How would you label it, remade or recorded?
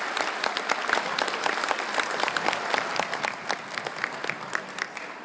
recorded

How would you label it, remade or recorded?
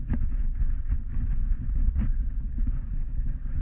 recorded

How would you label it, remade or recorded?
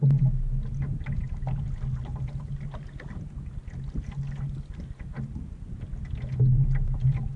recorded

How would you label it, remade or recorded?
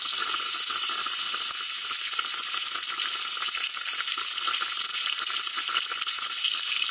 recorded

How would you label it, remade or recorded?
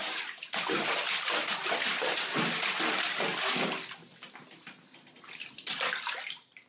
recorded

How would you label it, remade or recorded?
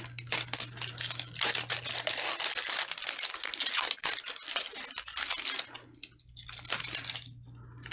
recorded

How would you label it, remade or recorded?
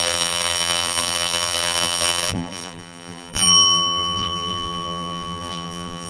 remade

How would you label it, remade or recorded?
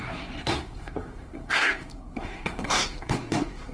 remade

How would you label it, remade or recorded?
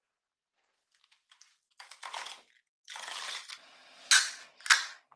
recorded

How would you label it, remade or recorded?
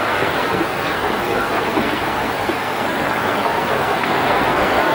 remade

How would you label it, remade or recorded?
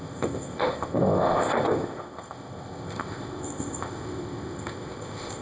remade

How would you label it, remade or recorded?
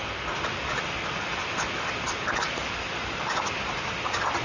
recorded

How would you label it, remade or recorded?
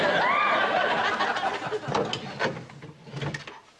recorded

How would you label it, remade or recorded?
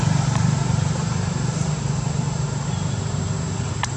remade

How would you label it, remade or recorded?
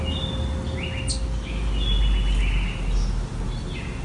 recorded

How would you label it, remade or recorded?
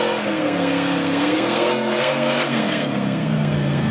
remade